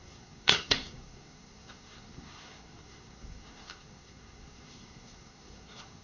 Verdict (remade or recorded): remade